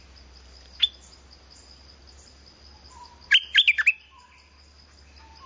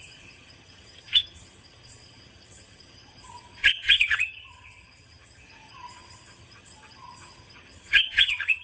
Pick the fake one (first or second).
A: second